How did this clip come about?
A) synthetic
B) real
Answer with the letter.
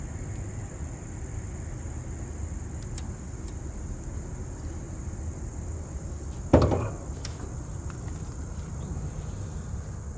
B